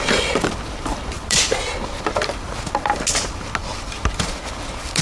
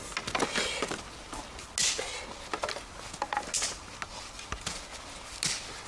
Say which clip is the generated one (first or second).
first